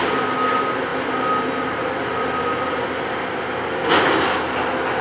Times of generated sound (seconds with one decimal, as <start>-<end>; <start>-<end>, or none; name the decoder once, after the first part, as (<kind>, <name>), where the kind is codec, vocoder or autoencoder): none